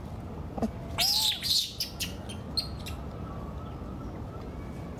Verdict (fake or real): real